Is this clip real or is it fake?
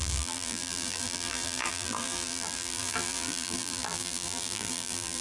fake